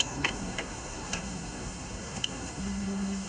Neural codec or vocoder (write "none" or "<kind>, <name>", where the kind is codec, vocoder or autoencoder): codec, SNAC